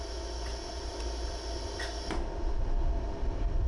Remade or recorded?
recorded